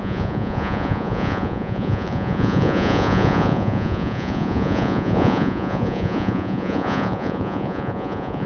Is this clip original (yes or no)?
no